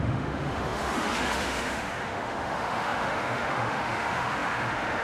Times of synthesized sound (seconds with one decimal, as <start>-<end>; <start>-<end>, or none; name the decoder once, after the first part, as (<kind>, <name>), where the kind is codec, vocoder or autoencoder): 0.0-5.0 (autoencoder, DAC-VAE)